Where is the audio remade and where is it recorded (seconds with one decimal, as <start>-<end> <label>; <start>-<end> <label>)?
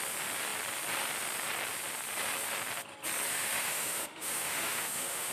0.0-3.3 recorded; 3.3-5.3 remade